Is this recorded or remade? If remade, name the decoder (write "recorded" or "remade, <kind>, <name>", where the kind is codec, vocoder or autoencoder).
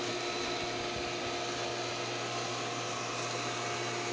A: recorded